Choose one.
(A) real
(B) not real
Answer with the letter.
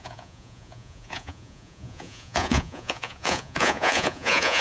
B